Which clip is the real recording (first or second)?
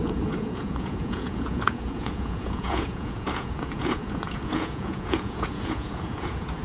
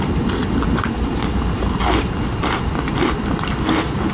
second